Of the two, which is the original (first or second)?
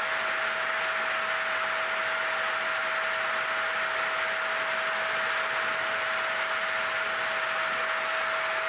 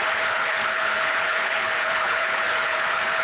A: first